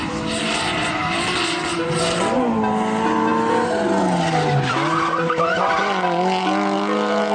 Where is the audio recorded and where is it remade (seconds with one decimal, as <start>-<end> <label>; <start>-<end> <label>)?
0.0-7.3 recorded